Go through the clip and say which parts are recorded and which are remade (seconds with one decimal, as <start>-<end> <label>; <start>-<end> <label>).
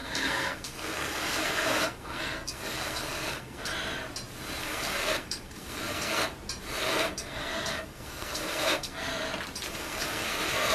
0.0-3.7 remade; 3.7-4.6 recorded; 4.6-6.3 remade; 6.3-6.8 recorded; 6.8-9.1 remade; 9.1-9.7 recorded; 9.7-10.7 remade